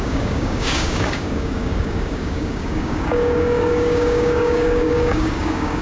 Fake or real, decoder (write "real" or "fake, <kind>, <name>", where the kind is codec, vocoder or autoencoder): fake, codec, DAC